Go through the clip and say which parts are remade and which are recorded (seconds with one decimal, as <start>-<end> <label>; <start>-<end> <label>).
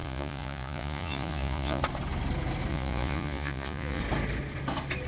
0.0-1.8 remade; 1.8-2.7 recorded; 2.7-4.0 remade; 4.0-5.1 recorded